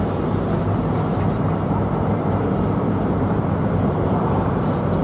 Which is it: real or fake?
fake